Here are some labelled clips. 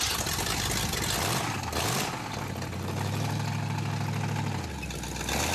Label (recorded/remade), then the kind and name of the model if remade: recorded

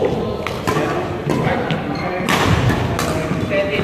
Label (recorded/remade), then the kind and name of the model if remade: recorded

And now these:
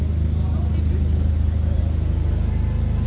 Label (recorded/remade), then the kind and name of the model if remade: recorded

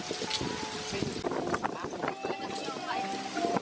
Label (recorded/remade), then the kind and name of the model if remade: recorded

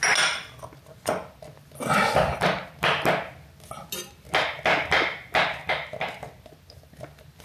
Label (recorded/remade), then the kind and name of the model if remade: recorded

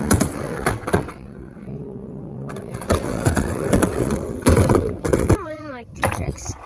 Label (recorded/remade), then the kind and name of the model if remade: remade, vocoder, WaveNeXt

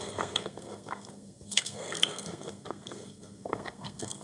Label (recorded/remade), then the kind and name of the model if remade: remade, codec, SNAC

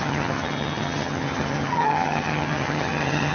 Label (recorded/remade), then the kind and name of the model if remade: remade, vocoder, HiFi-GAN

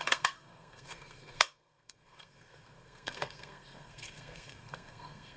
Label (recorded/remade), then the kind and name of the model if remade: remade, codec, SNAC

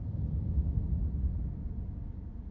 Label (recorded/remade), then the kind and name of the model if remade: recorded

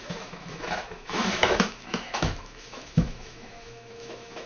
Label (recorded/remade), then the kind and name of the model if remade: remade, autoencoder, DAC-VAE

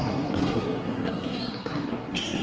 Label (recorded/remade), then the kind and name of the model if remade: remade, codec, SNAC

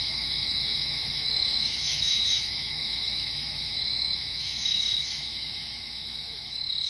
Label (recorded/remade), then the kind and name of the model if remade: remade, autoencoder, DAC-VAE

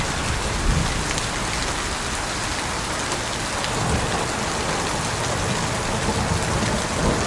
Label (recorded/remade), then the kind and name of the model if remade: recorded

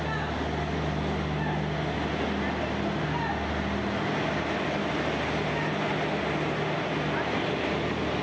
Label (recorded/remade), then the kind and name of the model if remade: recorded